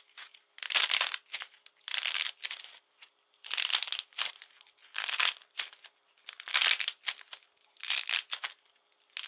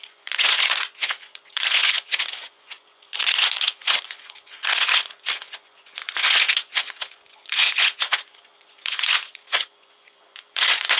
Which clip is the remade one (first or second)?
second